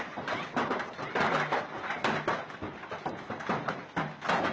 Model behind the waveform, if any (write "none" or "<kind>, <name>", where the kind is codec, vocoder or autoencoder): none